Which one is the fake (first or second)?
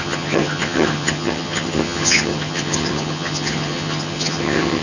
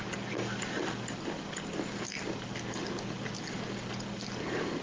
first